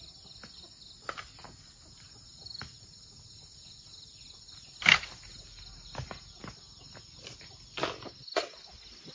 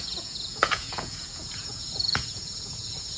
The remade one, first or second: second